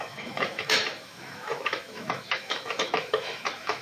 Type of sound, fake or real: fake